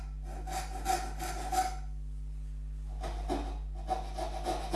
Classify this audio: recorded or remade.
recorded